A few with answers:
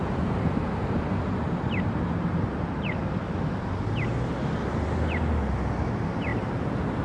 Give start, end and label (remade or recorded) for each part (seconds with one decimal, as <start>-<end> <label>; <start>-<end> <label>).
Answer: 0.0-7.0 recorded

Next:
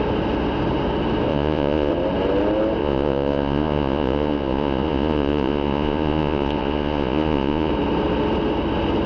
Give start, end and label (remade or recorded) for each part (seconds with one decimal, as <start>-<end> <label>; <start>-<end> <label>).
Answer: 0.0-1.3 recorded; 1.3-1.9 remade; 1.9-2.8 recorded; 2.8-7.7 remade; 7.7-9.1 recorded

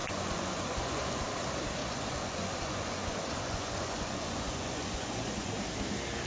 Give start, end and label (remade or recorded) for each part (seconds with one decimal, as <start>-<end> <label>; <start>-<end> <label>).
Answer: 0.0-1.2 remade; 1.2-1.8 recorded; 1.8-5.6 remade; 5.6-6.3 recorded

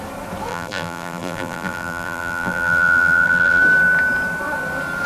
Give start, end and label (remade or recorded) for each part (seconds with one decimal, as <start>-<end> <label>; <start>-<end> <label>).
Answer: 0.0-0.5 recorded; 0.5-3.6 remade; 3.6-5.1 recorded

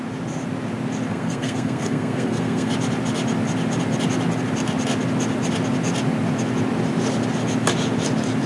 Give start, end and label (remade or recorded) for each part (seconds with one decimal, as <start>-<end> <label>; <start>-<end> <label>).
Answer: 0.0-1.1 recorded; 1.1-2.7 remade; 2.7-8.5 recorded